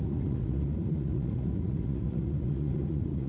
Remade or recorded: remade